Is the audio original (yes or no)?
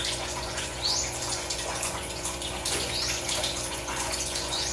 no